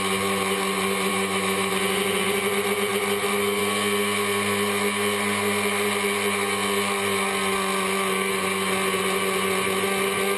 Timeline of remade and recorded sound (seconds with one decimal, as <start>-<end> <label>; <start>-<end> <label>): 0.0-1.1 recorded; 1.1-1.7 remade; 1.7-10.4 recorded